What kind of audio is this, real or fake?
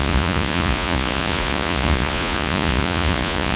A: fake